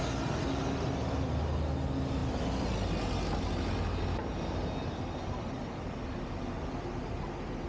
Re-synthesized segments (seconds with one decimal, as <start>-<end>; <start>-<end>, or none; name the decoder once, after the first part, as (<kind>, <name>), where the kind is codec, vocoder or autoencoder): none

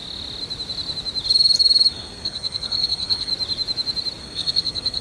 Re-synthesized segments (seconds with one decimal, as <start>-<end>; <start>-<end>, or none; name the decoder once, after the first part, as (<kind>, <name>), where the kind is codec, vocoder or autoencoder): 1.9-3.3 (codec, SNAC); 4.2-5.0